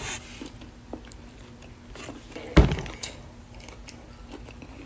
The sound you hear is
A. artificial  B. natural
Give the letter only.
B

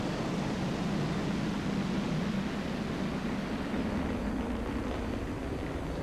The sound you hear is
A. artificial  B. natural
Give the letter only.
B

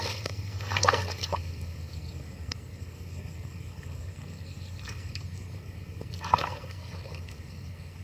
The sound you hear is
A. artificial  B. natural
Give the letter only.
A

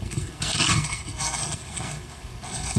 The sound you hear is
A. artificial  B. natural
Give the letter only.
A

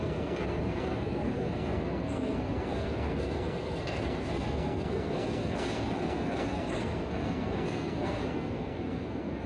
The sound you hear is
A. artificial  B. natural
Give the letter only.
A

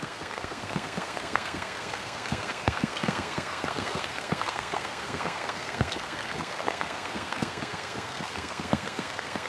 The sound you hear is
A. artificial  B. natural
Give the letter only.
A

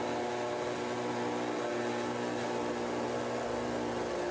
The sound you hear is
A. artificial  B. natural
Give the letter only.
B